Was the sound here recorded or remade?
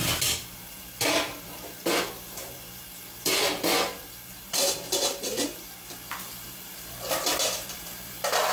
remade